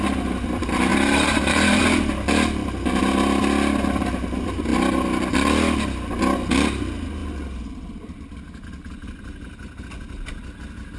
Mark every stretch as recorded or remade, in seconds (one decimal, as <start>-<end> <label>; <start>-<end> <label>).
0.0-0.9 recorded; 0.9-1.8 remade; 1.8-11.0 recorded